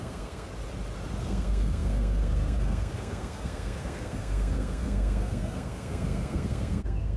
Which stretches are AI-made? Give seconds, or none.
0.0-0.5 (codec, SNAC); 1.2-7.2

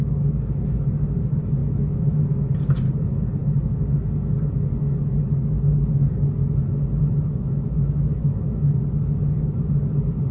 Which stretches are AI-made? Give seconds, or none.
1.6-2.2 (autoencoder, DAC-VAE); 7.3-8.8

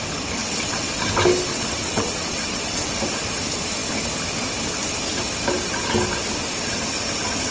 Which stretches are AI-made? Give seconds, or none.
0.4-0.9 (vocoder, WaveNeXt); 1.5-2.9